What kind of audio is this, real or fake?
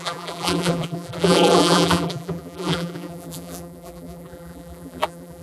fake